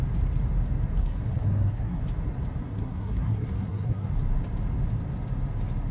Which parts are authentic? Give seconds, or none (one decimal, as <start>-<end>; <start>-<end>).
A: 0.0-1.0; 2.0-2.6; 4.1-5.9